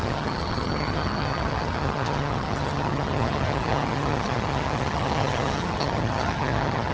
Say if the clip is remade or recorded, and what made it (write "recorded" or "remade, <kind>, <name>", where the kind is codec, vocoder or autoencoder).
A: remade, vocoder, HiFi-GAN